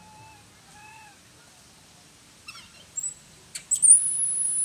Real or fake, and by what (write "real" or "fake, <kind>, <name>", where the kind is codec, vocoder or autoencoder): real